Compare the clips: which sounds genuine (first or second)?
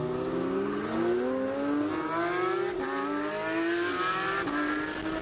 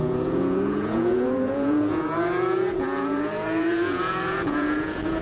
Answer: first